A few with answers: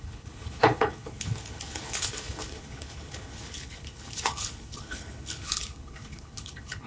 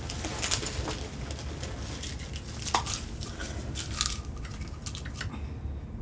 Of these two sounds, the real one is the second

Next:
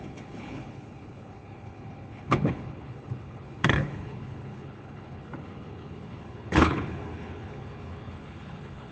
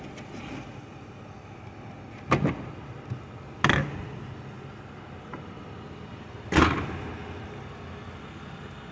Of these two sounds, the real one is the second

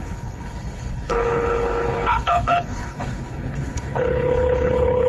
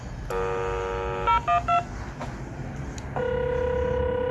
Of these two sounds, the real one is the second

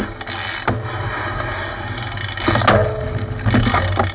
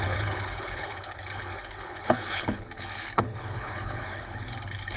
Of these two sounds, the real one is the first